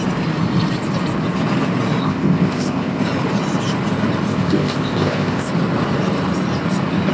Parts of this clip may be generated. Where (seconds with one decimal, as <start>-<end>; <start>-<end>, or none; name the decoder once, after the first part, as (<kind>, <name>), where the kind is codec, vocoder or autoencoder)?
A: 2.0-3.0 (codec, ZipCodec); 4.3-5.5